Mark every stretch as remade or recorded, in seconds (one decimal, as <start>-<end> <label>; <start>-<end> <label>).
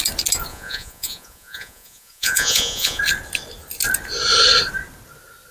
0.0-0.5 recorded; 0.5-3.0 remade; 3.0-5.5 recorded